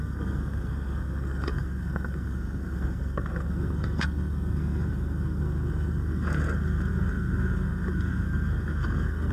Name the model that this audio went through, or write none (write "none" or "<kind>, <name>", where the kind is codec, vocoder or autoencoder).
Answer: codec, SNAC